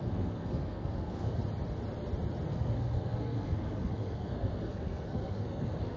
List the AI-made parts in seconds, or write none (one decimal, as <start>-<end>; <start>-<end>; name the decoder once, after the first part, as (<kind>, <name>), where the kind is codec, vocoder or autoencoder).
0.0-1.4 (codec, SNAC); 2.5-6.0